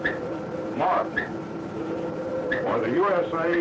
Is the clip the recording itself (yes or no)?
no